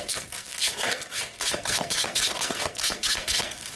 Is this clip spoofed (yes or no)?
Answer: yes